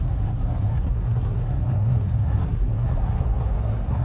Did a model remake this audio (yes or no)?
yes